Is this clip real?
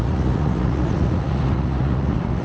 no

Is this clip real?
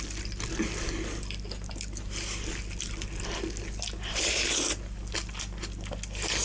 yes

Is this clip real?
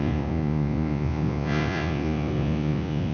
no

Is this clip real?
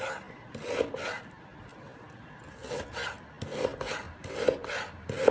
yes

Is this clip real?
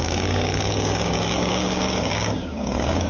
no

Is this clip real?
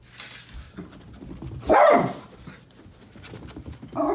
yes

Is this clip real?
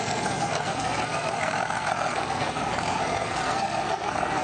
no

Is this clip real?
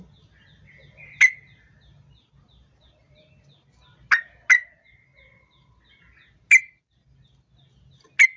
yes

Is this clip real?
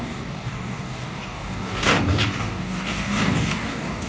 no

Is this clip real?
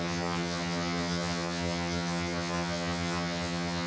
no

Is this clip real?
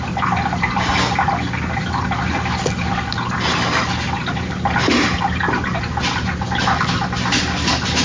yes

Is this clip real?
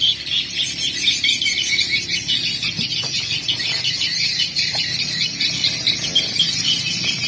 yes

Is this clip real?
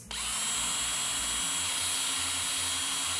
yes